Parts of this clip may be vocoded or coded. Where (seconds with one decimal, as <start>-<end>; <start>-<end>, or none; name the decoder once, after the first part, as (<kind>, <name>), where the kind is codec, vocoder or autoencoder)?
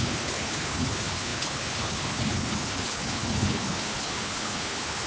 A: 0.0-5.1 (codec, HILCodec)